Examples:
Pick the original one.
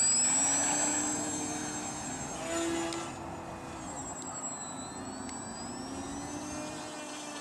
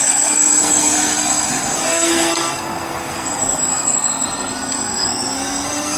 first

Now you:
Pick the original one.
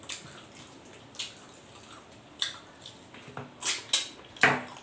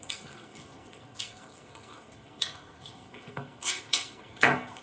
first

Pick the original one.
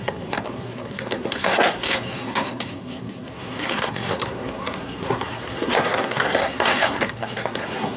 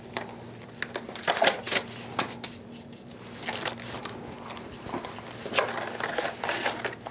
second